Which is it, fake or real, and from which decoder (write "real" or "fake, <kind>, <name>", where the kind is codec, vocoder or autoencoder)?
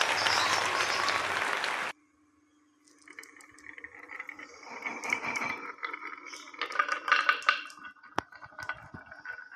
real